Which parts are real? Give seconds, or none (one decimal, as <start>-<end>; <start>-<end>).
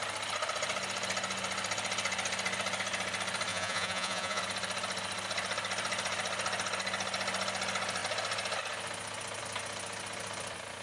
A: 0.0-3.5; 4.4-10.8